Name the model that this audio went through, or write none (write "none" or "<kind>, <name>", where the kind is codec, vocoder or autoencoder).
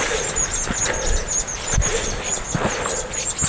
none